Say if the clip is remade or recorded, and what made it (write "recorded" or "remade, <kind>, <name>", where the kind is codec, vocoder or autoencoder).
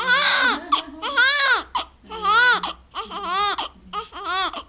recorded